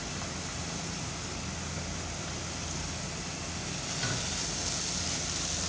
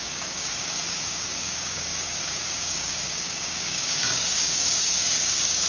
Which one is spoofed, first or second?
second